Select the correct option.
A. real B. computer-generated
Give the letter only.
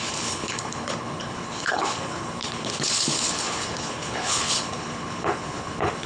B